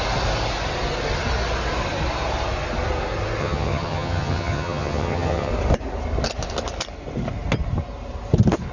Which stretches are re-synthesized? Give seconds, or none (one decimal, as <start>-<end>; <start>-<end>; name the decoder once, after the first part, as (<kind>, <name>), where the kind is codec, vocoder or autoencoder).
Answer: 3.4-5.5 (vocoder, HiFi-GAN)